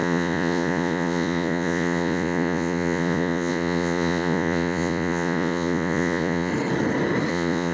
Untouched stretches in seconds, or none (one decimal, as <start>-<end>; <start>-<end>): 6.5-7.3